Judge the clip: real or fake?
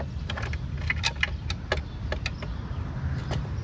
real